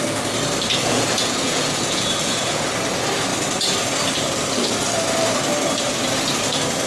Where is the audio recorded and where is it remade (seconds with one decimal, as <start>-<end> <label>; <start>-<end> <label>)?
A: 0.0-0.8 recorded; 0.8-2.6 remade; 2.6-6.9 recorded